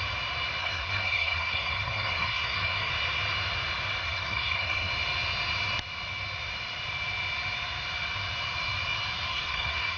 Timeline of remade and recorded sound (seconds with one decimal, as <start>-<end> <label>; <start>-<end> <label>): 0.0-0.6 recorded; 0.6-2.9 remade; 2.9-4.0 recorded; 4.0-4.9 remade; 4.9-9.3 recorded; 9.3-10.0 remade

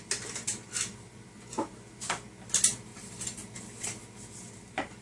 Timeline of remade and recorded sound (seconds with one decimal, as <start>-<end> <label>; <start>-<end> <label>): 0.0-5.0 recorded

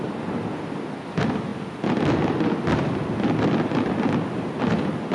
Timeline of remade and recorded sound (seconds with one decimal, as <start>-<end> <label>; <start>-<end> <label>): 0.0-5.1 recorded

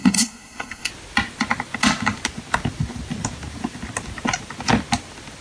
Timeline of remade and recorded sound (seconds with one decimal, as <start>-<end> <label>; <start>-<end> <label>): 0.0-0.9 remade; 0.9-5.4 recorded

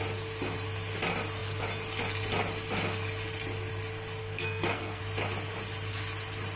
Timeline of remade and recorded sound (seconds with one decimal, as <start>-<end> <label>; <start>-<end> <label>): 0.0-4.2 recorded; 4.2-5.0 remade; 5.0-6.6 recorded